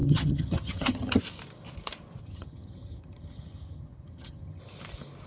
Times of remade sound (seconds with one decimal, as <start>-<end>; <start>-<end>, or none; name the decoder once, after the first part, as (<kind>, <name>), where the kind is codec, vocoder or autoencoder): 0.0-1.2 (vocoder, HiFi-GAN); 2.2-4.6